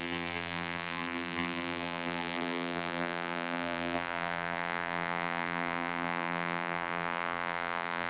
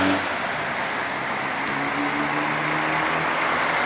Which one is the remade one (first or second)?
first